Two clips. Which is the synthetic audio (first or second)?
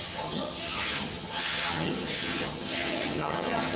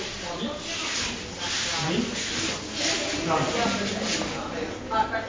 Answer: first